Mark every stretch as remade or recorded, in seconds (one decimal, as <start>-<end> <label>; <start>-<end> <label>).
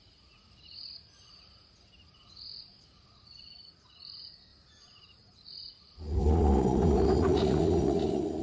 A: 0.0-8.4 remade